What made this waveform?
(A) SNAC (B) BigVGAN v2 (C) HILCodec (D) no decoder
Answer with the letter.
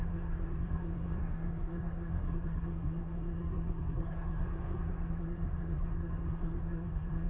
A